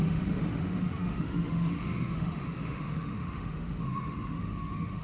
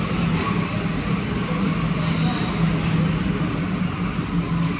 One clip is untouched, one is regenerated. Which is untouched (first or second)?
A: second